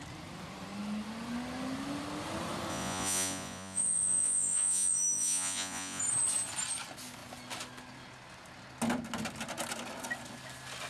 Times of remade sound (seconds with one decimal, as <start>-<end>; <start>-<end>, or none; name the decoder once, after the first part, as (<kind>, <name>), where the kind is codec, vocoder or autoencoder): 2.7-6.0 (vocoder, Vocos)